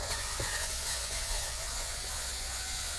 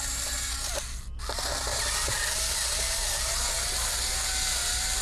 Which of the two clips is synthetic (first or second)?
first